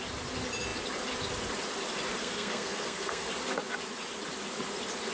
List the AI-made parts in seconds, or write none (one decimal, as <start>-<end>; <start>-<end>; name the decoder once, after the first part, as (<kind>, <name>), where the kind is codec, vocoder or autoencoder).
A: 2.2-3.3 (codec, SNAC)